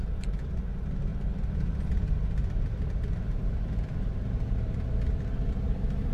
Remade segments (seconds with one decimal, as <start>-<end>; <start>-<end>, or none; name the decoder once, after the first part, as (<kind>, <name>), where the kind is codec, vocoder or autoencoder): 1.1-4.2 (vocoder, BigVGAN v2)